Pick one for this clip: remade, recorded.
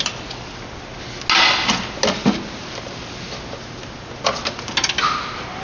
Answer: recorded